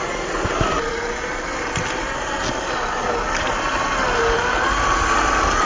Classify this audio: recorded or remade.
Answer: recorded